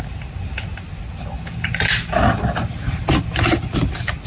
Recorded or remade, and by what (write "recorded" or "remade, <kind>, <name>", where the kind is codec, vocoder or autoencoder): recorded